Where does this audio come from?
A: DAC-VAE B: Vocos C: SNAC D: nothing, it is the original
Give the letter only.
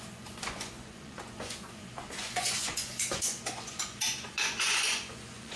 B